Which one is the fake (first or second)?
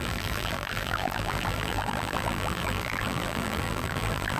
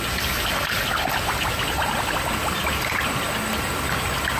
first